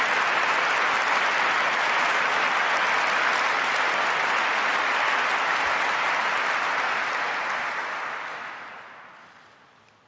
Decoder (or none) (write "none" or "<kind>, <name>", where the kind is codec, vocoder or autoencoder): none